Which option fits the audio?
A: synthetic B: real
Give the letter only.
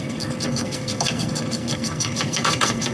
A